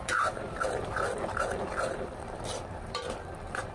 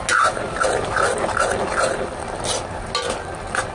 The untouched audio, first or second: second